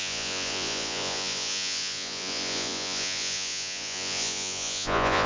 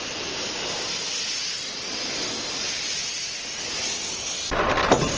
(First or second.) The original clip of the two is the second